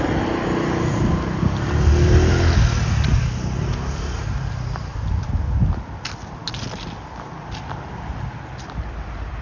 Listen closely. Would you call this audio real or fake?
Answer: real